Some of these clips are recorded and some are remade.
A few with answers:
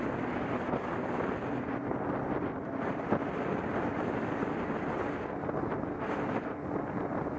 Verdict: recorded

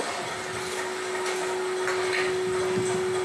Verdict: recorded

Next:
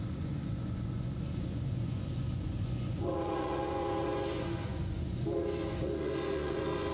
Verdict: remade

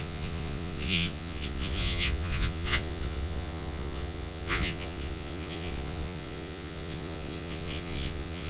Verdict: remade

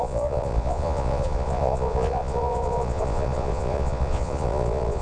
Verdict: remade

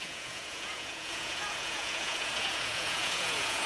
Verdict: remade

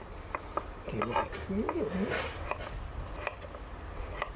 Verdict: recorded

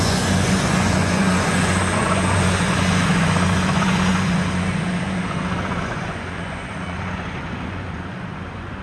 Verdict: remade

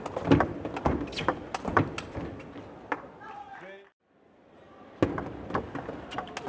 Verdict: recorded